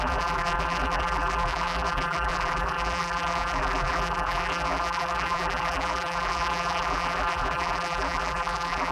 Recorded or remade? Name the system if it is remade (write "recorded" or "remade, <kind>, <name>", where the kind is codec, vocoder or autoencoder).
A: remade, vocoder, BigVGAN v2